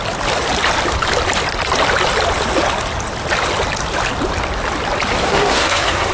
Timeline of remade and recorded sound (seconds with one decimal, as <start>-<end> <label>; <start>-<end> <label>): 0.0-5.2 recorded; 5.2-6.1 remade